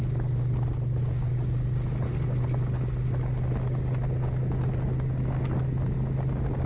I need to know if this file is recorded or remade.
recorded